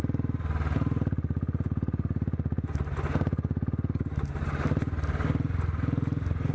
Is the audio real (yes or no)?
yes